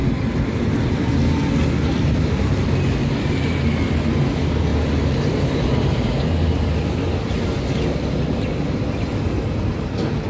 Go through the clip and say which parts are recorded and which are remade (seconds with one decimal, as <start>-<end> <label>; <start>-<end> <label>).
0.0-4.7 recorded; 4.7-6.3 remade; 6.3-8.5 recorded; 8.5-9.2 remade; 9.2-10.3 recorded